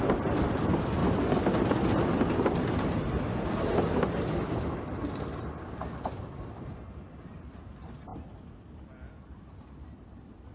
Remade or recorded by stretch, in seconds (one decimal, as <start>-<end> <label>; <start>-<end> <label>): 0.0-10.5 recorded